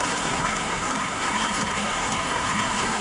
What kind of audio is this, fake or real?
fake